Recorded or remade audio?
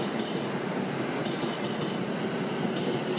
recorded